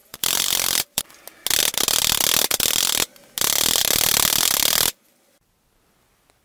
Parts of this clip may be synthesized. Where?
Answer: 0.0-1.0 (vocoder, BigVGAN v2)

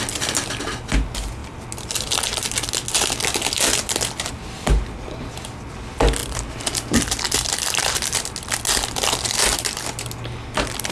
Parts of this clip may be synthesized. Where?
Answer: none

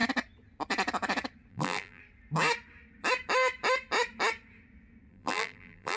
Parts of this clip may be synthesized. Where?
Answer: 1.5-2.0 (vocoder, BigVGAN v2); 5.1-6.0

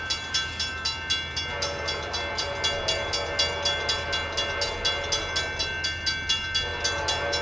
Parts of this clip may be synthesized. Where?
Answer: none

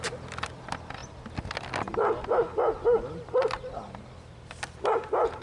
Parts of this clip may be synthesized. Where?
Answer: none

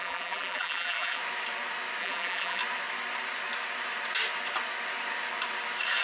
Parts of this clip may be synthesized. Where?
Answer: 0.0-1.2 (vocoder, BigVGAN v2); 2.0-2.6